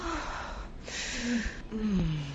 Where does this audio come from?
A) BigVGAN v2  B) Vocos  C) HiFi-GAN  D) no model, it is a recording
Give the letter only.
D